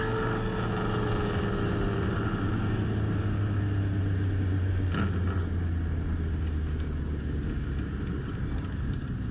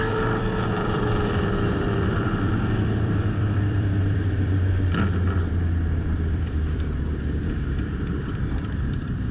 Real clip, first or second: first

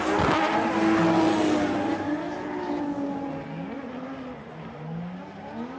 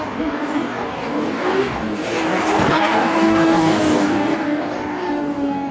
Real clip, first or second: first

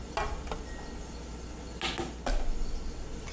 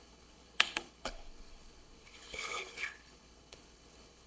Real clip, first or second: first